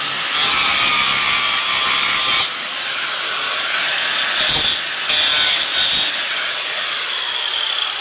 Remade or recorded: recorded